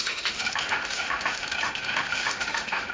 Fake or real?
fake